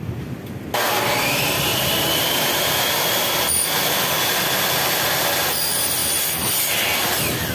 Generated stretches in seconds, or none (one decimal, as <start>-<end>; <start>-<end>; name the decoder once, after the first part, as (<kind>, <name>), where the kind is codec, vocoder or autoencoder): 1.7-4.1 (vocoder, BigVGAN v2); 6.0-6.8

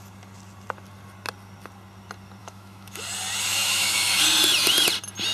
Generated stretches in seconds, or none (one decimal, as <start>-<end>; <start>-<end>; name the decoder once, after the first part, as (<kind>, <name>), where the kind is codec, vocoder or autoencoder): 2.4-3.0 (autoencoder, DAC-VAE); 3.5-4.2

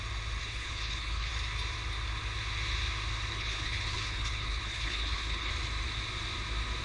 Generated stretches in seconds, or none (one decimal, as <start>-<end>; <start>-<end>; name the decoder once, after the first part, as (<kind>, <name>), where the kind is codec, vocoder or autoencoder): 0.4-1.3 (codec, HILCodec); 3.3-5.5